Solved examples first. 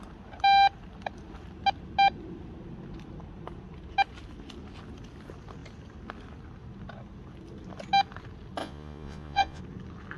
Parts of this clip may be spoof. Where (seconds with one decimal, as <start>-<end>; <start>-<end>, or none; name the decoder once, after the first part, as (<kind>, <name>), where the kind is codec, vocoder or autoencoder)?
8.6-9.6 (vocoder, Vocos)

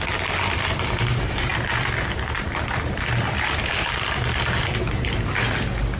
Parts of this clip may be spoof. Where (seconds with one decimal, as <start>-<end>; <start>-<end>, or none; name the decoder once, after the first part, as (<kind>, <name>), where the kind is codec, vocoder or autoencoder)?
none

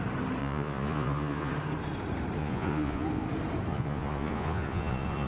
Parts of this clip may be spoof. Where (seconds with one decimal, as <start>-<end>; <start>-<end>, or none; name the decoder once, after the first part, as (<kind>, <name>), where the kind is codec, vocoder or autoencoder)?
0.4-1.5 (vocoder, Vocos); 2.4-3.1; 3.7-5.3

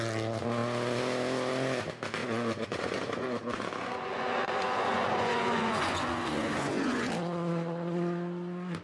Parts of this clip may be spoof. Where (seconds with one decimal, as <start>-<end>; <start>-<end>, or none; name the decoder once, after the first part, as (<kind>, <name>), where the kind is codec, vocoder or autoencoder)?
2.2-7.1 (vocoder, Vocos)

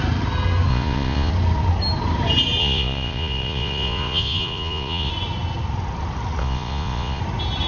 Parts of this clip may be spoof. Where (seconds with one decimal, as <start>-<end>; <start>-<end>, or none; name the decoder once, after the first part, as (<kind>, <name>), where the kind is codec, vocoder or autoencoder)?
0.7-1.3 (vocoder, Vocos); 2.6-5.1; 6.4-7.2

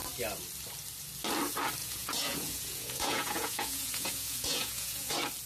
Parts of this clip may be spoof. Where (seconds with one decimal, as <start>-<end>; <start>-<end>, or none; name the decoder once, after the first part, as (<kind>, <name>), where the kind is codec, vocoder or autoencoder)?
1.8-5.1 (vocoder, Vocos)